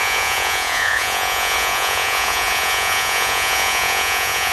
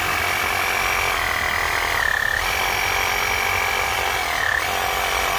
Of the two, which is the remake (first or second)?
first